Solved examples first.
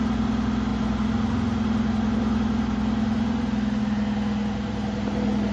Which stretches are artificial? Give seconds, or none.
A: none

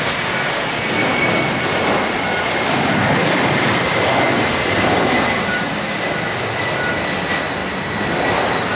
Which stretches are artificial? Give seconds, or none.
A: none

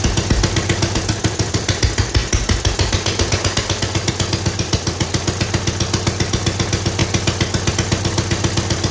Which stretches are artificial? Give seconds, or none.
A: none

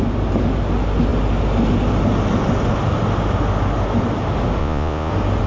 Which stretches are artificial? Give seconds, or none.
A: 4.6-5.1 (vocoder, Vocos)

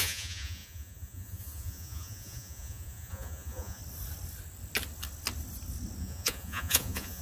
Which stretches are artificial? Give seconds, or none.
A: 0.0-3.8 (vocoder, Vocos); 6.0-7.2

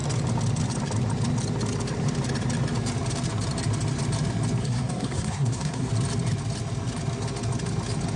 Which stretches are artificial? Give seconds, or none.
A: 4.6-5.9 (codec, SNAC)

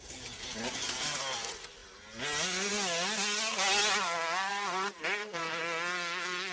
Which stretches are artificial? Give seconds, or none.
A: 4.5-5.6 (vocoder, BigVGAN v2)

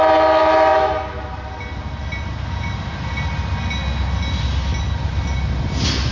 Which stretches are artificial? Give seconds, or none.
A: none